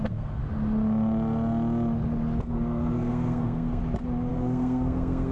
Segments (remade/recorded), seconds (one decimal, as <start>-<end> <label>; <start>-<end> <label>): 0.0-0.4 remade; 0.4-2.4 recorded; 2.4-3.8 remade; 3.8-4.3 recorded; 4.3-5.3 remade